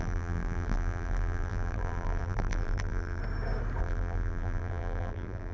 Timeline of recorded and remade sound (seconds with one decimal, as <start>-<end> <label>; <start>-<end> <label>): 0.0-3.2 remade; 3.2-3.8 recorded; 3.8-5.5 remade